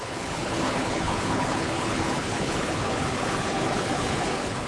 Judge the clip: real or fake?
fake